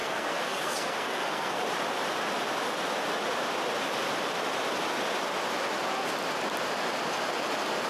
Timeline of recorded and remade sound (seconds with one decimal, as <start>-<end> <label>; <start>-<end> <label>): 0.0-1.6 remade; 1.6-7.9 recorded